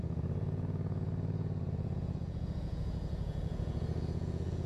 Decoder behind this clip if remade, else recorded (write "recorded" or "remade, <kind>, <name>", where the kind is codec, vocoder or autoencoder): remade, vocoder, Vocos